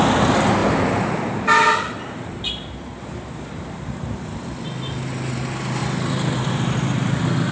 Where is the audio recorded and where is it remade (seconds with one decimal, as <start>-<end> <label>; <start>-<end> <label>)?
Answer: 0.0-0.6 recorded; 0.6-2.5 remade; 2.5-7.5 recorded

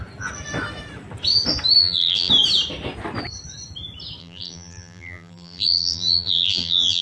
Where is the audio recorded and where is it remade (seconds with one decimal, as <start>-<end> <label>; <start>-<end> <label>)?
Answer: 0.0-1.8 recorded; 1.8-2.3 remade; 2.3-4.2 recorded; 4.2-7.0 remade

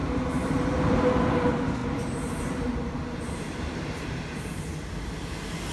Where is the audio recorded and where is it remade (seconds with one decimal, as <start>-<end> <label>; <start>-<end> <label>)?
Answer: 0.0-1.2 remade; 1.2-1.8 recorded; 1.8-4.2 remade; 4.2-5.7 recorded

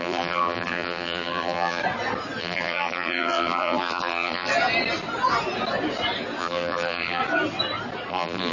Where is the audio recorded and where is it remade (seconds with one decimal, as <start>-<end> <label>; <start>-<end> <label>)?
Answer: 0.0-1.8 remade; 1.8-2.4 recorded; 2.4-4.5 remade; 4.5-6.4 recorded; 6.4-7.2 remade; 7.2-8.1 recorded; 8.1-8.5 remade

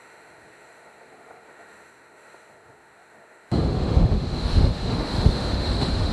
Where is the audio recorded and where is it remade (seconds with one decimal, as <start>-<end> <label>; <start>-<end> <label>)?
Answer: 0.0-6.1 remade

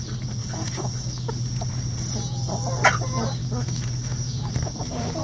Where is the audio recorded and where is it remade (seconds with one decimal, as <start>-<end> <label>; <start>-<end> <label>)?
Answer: 0.0-0.4 recorded; 0.4-1.3 remade; 1.3-3.4 recorded; 3.4-4.5 remade; 4.5-5.2 recorded